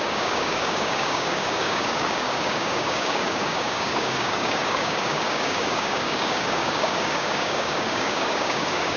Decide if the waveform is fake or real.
fake